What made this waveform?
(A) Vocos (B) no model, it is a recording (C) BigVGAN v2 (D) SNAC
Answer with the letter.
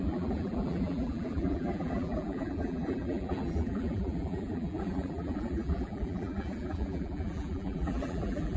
C